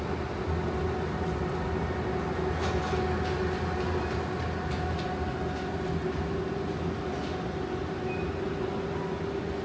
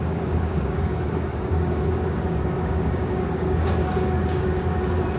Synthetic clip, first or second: second